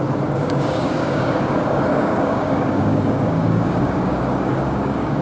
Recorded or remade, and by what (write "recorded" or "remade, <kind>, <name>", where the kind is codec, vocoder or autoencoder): remade, codec, DAC